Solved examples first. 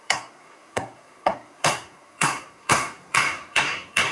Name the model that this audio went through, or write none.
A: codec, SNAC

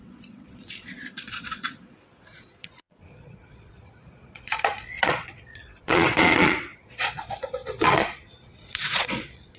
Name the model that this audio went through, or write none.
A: vocoder, Vocos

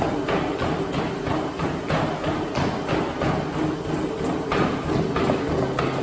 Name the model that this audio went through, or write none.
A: none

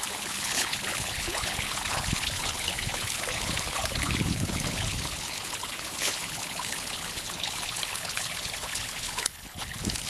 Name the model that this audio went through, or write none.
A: codec, HILCodec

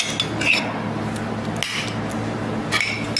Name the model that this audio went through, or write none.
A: none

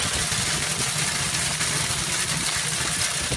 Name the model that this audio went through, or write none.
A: none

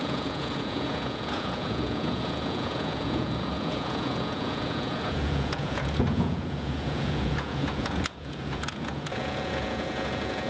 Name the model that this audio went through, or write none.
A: vocoder, Vocos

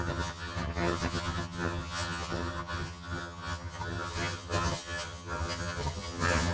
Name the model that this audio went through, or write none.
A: vocoder, HiFi-GAN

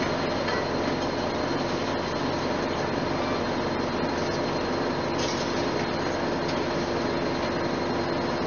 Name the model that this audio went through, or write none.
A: none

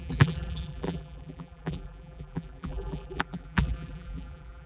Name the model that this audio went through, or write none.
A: vocoder, BigVGAN v2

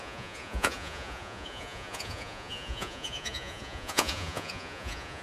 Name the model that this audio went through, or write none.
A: vocoder, Vocos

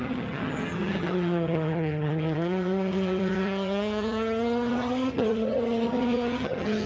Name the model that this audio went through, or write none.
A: vocoder, HiFi-GAN